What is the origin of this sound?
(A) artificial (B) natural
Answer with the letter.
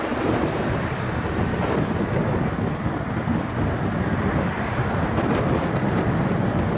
B